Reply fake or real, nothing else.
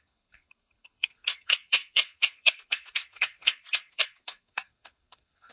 fake